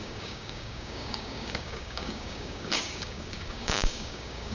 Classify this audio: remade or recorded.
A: remade